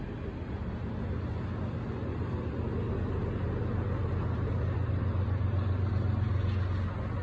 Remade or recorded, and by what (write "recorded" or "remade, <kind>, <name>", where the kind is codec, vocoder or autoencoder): recorded